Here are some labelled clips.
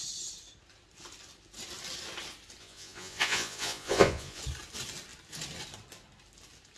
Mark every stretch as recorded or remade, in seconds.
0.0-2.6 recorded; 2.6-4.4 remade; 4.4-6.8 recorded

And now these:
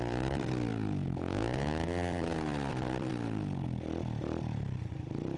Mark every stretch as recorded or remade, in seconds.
0.0-0.7 remade; 0.7-2.7 recorded; 2.7-3.1 remade; 3.1-4.9 recorded; 4.9-5.4 remade

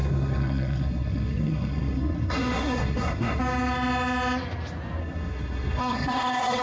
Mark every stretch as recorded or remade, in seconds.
0.0-3.4 remade; 3.4-5.0 recorded; 5.0-6.6 remade

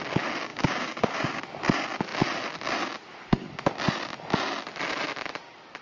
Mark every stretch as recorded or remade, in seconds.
0.0-0.5 recorded; 0.5-1.4 remade; 1.4-5.8 recorded

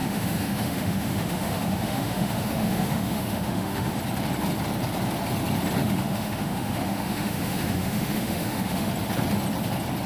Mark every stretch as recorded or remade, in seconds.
0.0-4.0 remade; 4.0-5.8 recorded; 5.8-8.9 remade; 8.9-10.1 recorded

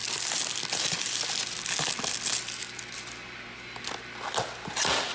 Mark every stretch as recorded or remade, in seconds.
0.0-5.1 recorded

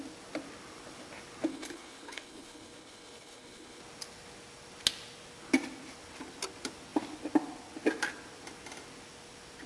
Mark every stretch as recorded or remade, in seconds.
0.0-1.5 recorded; 1.5-3.8 remade; 3.8-9.7 recorded